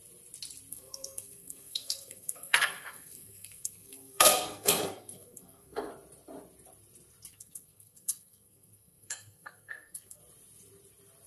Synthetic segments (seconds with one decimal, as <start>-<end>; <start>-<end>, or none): 0.7-5.9; 7.3-10.2